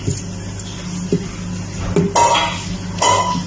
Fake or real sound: real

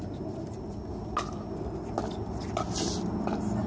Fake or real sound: real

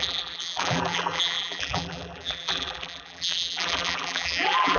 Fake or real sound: fake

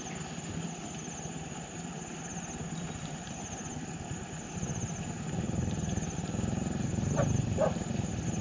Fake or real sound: real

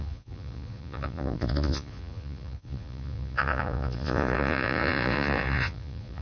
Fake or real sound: fake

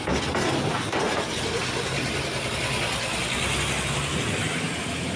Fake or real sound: real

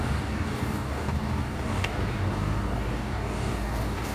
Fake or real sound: fake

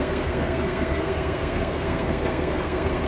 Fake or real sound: fake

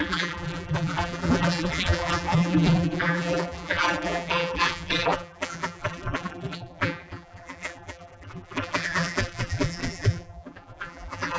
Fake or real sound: fake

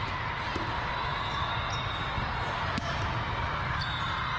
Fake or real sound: real